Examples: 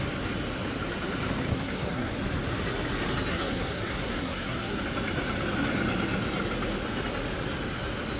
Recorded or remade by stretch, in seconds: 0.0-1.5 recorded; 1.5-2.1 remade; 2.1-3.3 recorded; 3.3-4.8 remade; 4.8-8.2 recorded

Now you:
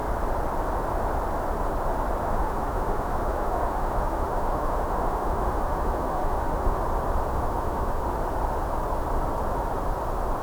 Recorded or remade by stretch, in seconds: 0.0-2.2 recorded; 2.2-6.8 remade; 6.8-7.3 recorded; 7.3-8.0 remade; 8.0-10.4 recorded

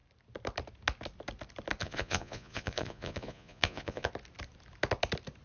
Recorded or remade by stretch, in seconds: 0.0-1.8 recorded; 1.8-4.1 remade; 4.1-5.4 recorded

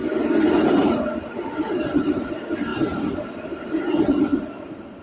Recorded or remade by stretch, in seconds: 0.0-0.8 recorded; 0.8-1.7 remade; 1.7-4.3 recorded; 4.3-5.0 remade